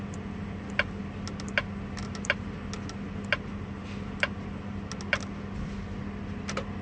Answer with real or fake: real